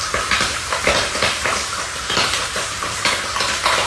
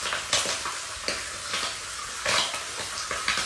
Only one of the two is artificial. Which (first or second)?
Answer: first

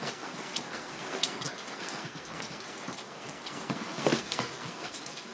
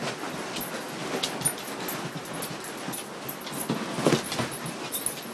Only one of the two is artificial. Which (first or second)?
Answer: first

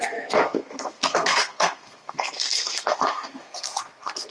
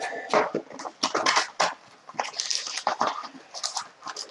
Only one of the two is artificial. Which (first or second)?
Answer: first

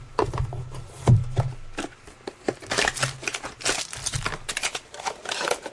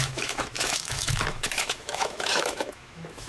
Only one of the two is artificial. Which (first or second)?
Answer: second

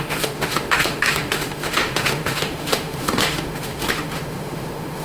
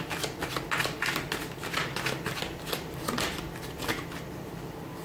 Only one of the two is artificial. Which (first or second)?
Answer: first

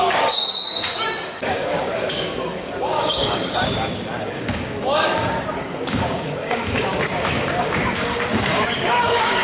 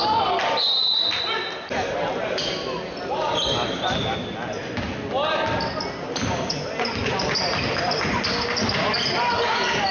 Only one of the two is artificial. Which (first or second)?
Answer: first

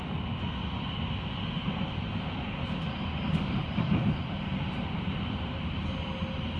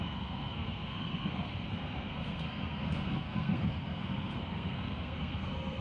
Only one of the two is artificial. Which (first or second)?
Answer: second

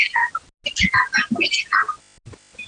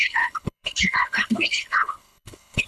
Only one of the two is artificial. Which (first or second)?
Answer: second